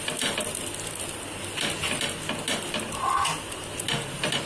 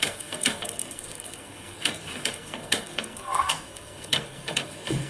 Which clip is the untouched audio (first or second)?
first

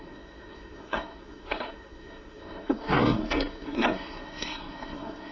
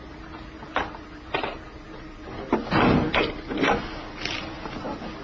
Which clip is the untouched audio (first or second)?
second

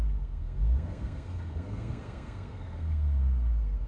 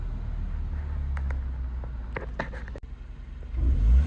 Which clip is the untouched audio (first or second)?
second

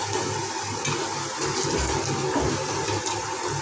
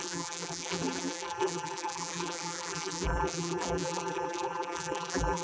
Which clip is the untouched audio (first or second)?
first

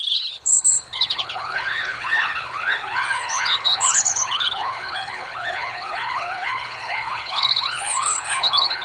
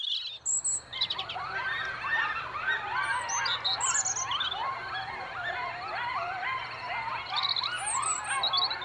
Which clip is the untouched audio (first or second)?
second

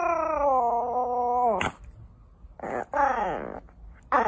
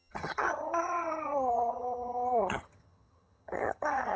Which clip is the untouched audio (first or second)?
first